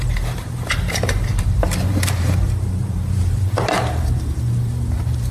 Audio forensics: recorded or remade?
remade